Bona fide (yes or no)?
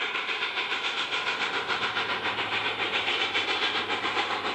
no